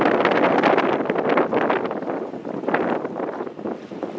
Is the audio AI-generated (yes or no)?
no